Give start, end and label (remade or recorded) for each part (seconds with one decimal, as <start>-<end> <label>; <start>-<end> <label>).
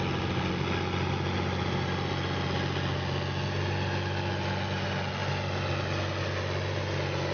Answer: 0.0-7.3 recorded